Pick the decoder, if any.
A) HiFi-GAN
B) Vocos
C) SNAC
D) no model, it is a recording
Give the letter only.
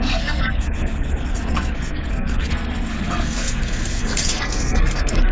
C